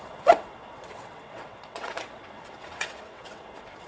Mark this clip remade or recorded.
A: remade